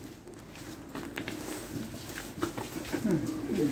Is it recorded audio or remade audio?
recorded